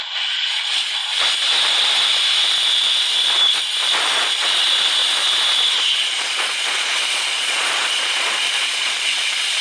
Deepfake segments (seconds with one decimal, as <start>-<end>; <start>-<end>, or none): 0.0-1.0; 4.2-5.0; 5.7-9.6